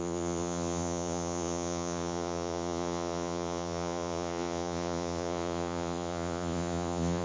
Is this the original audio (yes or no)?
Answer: no